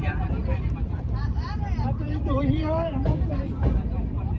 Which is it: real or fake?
fake